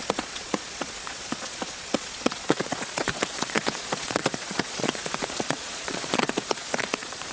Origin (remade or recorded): remade